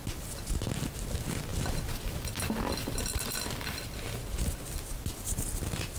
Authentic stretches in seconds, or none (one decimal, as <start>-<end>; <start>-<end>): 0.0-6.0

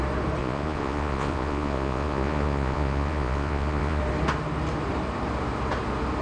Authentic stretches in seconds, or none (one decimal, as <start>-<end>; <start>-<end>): 0.0-0.4; 4.0-6.2

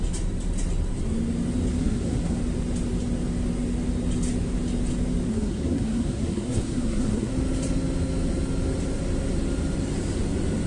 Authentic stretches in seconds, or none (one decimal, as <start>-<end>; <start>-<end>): 0.0-1.8; 2.4-5.3; 7.3-10.7

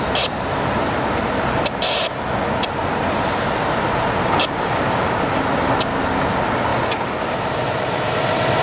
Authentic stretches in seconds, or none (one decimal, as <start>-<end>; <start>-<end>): 0.0-8.6

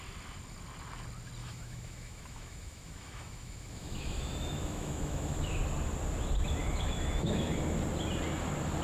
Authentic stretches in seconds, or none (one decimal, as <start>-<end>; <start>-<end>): 0.0-1.4; 5.6-6.6; 7.6-8.8